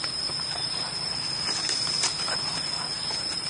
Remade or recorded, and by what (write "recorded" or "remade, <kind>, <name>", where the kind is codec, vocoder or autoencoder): remade, vocoder, BigVGAN v2